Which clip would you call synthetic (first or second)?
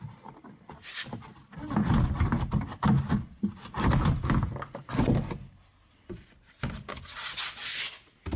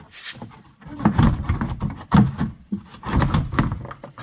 second